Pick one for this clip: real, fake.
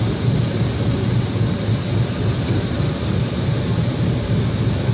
real